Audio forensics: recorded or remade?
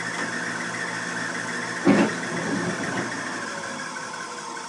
recorded